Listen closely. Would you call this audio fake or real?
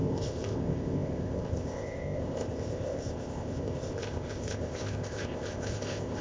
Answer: fake